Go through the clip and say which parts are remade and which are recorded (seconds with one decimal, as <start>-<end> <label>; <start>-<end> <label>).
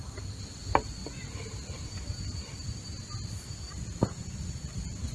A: 0.0-5.1 recorded